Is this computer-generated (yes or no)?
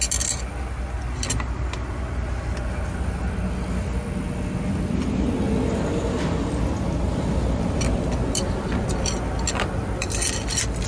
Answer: no